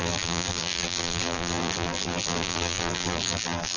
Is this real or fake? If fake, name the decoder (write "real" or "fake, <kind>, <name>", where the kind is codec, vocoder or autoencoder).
fake, vocoder, BigVGAN v2